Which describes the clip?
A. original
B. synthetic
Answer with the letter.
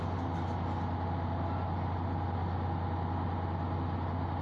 A